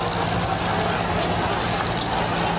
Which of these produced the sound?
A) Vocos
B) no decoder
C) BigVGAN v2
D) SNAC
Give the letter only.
B